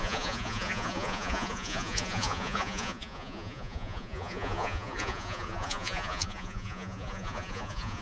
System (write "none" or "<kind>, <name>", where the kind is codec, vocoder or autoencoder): vocoder, Vocos